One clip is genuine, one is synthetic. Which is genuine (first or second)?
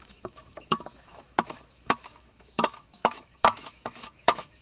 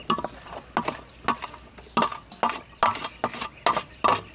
second